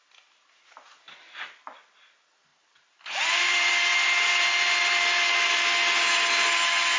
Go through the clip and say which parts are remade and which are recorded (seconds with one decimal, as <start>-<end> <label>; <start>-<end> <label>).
0.0-7.0 recorded